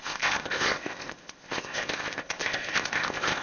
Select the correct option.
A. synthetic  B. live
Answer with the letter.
A